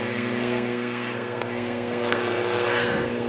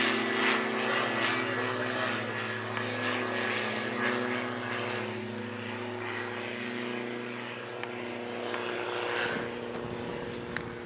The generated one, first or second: first